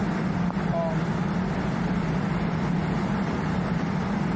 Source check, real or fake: real